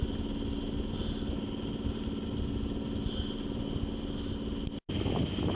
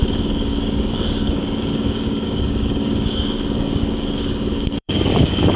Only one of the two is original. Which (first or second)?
first